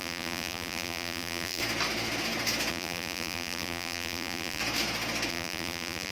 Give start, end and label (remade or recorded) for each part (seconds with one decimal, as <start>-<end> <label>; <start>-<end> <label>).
0.0-1.6 remade; 1.6-2.7 recorded; 2.7-4.6 remade; 4.6-5.3 recorded; 5.3-6.1 remade